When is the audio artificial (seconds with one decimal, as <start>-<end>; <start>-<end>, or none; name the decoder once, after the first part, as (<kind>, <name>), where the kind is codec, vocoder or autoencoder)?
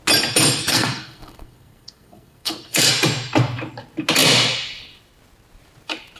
0.6-2.9 (codec, SNAC)